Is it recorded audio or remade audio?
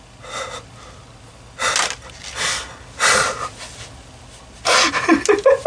recorded